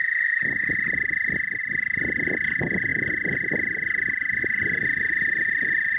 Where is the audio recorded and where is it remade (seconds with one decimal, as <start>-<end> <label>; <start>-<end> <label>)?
0.0-6.0 recorded